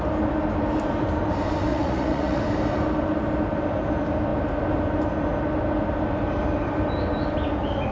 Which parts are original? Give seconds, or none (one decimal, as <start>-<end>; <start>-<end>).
0.0-1.7; 2.4-7.9